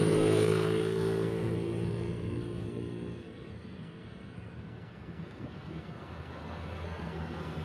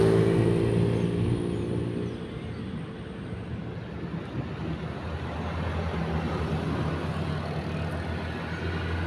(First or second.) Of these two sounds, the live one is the second